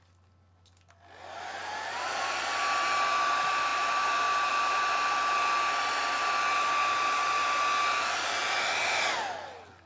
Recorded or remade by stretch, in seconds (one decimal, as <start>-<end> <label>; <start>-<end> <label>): 0.0-9.9 recorded